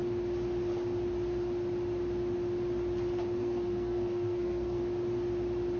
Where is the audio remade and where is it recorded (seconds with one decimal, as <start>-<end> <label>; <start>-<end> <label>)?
0.0-3.4 recorded; 3.4-4.8 remade; 4.8-5.8 recorded